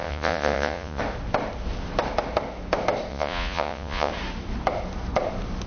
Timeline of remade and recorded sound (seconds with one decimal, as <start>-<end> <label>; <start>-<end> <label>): 0.0-1.0 remade; 1.0-3.1 recorded; 3.1-4.1 remade; 4.1-5.7 recorded